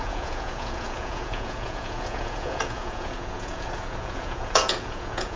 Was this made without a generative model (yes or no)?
no